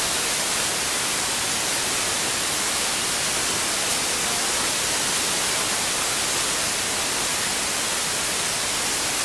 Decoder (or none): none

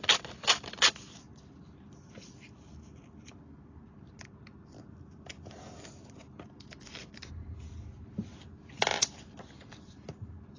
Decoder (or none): none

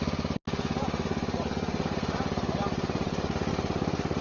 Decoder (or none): none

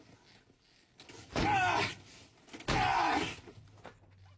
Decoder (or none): none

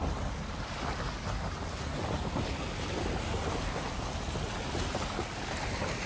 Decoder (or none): none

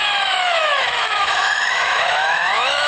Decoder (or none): autoencoder, DAC-VAE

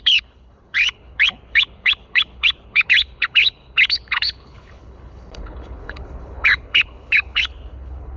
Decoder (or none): codec, HILCodec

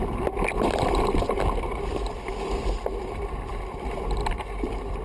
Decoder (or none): vocoder, BigVGAN v2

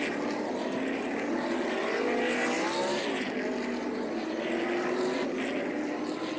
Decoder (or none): none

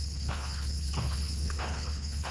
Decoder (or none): codec, HILCodec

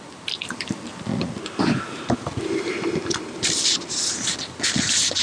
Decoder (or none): none